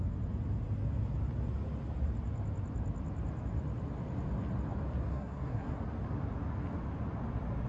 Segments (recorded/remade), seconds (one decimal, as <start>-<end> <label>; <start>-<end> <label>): 0.0-5.1 recorded; 5.1-5.8 remade; 5.8-7.7 recorded